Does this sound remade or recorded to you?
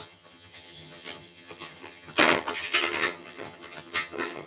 remade